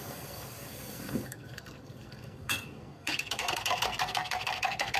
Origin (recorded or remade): remade